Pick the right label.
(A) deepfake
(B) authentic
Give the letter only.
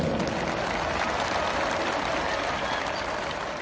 B